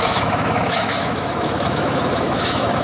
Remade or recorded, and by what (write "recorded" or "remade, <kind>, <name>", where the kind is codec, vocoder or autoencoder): remade, autoencoder, DAC-VAE